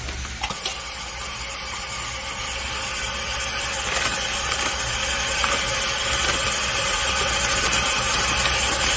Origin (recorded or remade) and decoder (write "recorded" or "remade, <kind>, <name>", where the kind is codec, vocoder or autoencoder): recorded